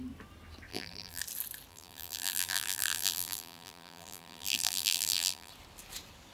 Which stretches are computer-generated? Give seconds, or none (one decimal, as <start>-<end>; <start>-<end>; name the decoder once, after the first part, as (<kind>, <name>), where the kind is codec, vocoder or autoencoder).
0.7-1.2 (vocoder, BigVGAN v2); 1.7-5.5